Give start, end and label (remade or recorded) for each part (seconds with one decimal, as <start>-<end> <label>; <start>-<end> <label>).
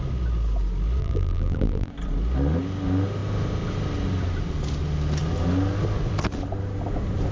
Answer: 0.0-1.0 recorded; 1.0-1.9 remade; 1.9-7.3 recorded